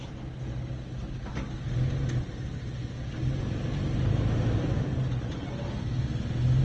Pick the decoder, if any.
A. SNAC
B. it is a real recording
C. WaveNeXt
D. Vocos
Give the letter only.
B